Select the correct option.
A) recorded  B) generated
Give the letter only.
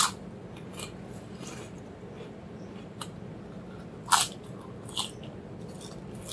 A